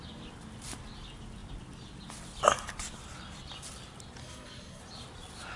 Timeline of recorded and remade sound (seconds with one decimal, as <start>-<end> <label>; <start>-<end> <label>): 0.0-4.2 recorded; 4.2-4.8 remade; 4.8-5.6 recorded